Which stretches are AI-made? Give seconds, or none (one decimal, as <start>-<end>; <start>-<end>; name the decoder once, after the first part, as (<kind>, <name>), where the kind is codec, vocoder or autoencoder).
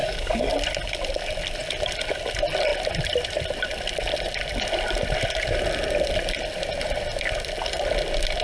0.0-0.5 (codec, DAC)